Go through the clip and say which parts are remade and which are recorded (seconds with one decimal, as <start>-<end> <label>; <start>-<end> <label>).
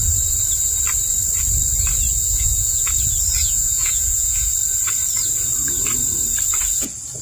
0.0-2.2 recorded; 2.2-2.9 remade; 2.9-3.4 recorded; 3.4-4.5 remade; 4.5-7.2 recorded